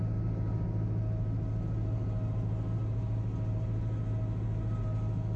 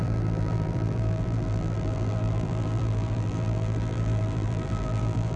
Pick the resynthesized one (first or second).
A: second